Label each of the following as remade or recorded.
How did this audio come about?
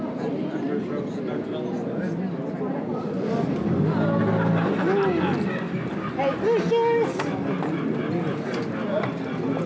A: recorded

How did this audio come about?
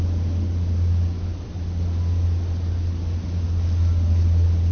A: recorded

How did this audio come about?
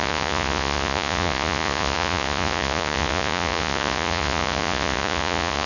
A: remade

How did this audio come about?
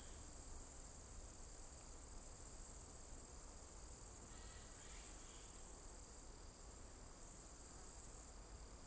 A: recorded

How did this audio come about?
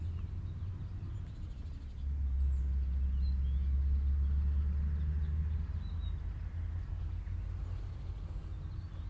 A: recorded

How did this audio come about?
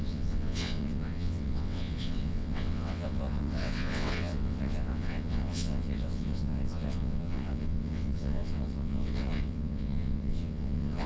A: remade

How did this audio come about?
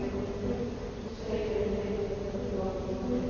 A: recorded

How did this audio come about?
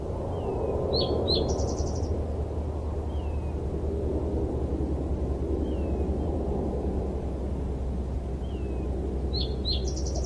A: recorded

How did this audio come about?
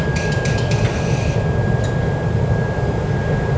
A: remade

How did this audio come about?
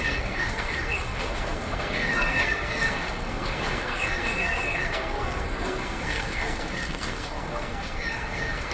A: remade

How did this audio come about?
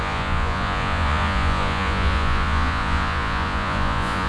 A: remade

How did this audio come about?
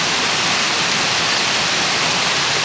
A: recorded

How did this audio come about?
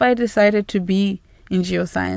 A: recorded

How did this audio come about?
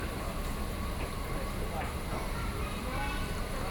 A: remade